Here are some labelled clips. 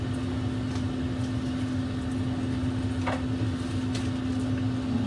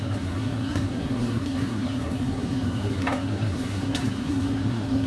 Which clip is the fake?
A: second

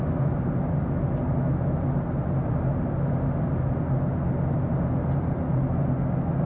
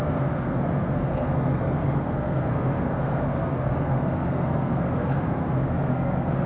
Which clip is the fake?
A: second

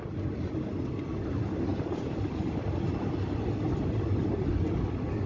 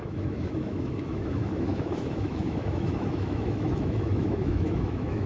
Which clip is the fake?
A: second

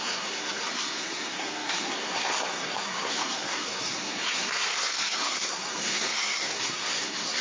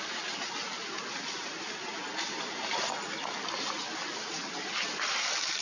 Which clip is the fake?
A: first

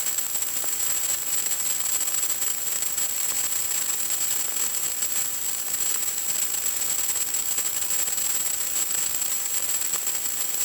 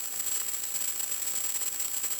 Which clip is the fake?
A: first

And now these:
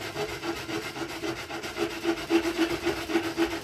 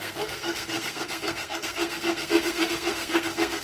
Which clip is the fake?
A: second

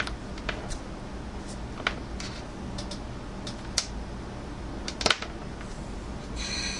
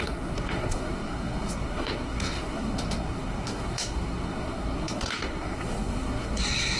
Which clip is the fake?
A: second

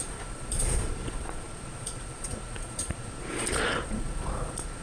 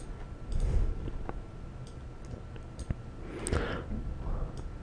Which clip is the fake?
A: first